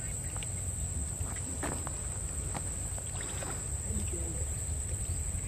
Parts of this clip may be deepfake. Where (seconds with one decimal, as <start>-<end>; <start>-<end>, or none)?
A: none